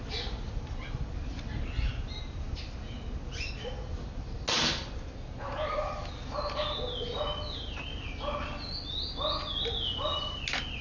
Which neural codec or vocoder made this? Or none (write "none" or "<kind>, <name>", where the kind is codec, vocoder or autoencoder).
none